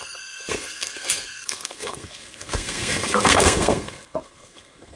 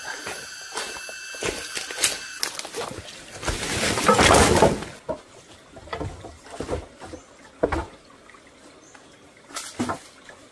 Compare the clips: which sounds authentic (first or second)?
second